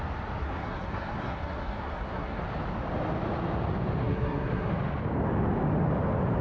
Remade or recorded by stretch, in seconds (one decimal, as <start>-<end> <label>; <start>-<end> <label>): 0.0-0.4 recorded; 0.4-2.4 remade; 2.4-4.0 recorded; 4.0-4.7 remade; 4.7-6.4 recorded